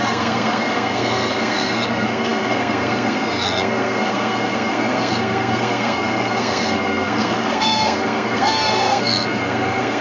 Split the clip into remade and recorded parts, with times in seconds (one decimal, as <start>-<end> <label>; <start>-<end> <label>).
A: 0.0-10.0 remade